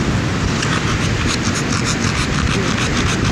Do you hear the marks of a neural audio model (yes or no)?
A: no